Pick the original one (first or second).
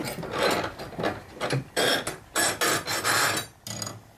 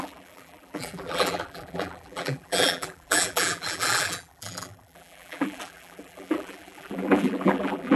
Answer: first